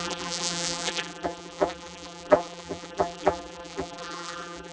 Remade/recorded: remade